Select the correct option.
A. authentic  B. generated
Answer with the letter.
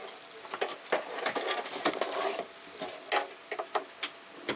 A